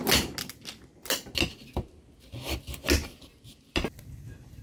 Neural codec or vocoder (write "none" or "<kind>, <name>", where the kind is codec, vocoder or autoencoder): none